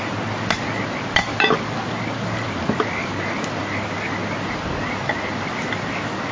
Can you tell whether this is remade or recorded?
recorded